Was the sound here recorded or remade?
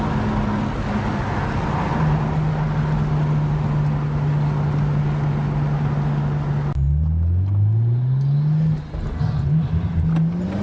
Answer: recorded